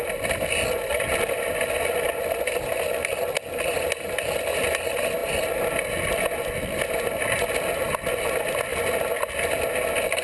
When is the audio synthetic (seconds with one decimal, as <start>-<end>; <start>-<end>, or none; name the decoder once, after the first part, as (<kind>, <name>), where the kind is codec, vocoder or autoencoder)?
none